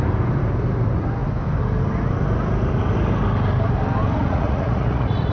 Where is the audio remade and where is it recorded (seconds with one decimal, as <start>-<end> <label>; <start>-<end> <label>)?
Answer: 0.0-4.2 recorded; 4.2-5.3 remade